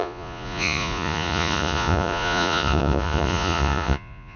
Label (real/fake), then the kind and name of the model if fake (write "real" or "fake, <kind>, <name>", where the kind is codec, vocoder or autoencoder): fake, vocoder, Vocos